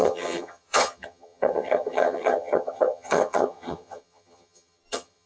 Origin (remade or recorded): remade